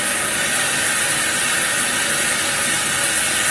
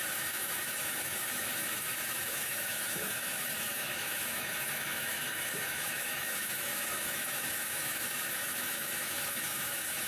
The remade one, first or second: second